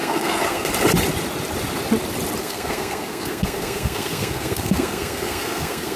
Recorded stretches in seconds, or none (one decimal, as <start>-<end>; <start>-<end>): 0.7-2.4